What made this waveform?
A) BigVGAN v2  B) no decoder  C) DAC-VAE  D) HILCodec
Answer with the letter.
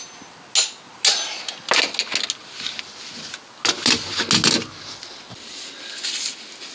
B